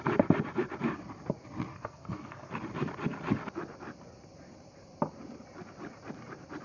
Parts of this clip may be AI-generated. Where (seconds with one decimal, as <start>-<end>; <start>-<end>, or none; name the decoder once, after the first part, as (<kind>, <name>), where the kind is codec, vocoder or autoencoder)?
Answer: 1.7-2.5 (codec, SNAC)